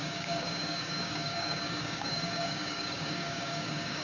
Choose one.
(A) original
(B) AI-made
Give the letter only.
B